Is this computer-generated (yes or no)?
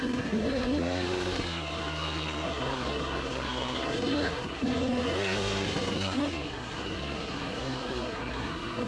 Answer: yes